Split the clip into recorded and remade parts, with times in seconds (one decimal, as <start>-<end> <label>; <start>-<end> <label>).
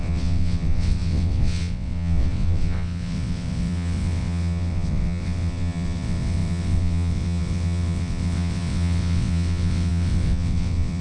0.0-11.0 remade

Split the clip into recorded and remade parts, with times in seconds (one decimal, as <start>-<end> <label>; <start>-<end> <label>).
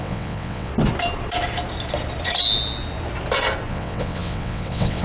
0.0-0.7 remade; 0.7-3.7 recorded; 3.7-5.0 remade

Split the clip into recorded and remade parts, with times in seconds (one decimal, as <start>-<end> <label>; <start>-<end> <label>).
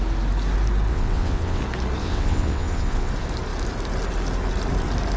0.0-0.9 recorded; 0.9-1.6 remade; 1.6-2.0 recorded; 2.0-3.1 remade; 3.1-5.2 recorded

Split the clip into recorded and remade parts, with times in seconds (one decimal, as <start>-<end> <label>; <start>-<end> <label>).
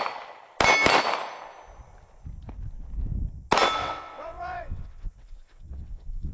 0.0-3.8 recorded; 3.8-6.3 remade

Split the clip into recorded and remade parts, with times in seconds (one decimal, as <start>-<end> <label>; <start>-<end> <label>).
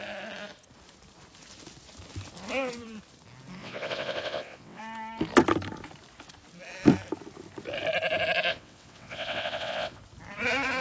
0.0-3.6 recorded; 3.6-4.8 remade; 4.8-8.5 recorded; 8.5-10.0 remade; 10.0-10.8 recorded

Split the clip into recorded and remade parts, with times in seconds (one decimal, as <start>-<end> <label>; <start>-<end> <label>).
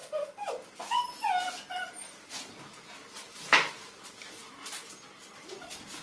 0.0-6.0 recorded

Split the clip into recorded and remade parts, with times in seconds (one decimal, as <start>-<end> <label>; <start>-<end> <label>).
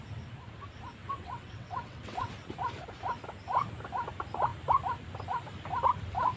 0.0-1.0 recorded; 1.0-2.3 remade; 2.3-6.4 recorded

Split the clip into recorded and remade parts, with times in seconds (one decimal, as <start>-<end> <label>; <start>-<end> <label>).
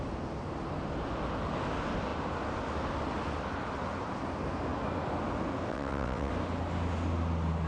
0.0-5.7 recorded; 5.7-6.3 remade; 6.3-7.7 recorded